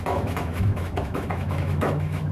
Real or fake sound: fake